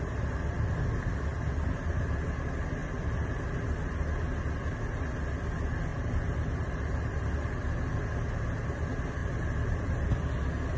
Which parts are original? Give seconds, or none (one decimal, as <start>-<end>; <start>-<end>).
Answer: 0.0-5.9; 7.3-10.8